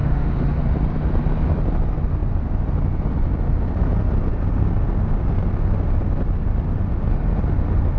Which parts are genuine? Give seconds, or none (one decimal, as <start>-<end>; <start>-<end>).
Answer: 0.6-8.0

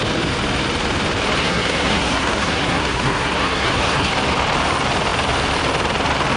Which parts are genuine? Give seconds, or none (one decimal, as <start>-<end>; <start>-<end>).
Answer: 0.0-1.4; 4.1-6.4

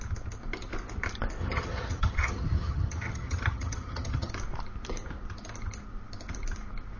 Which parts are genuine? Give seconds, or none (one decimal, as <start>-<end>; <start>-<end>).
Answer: 0.0-1.4; 4.3-7.0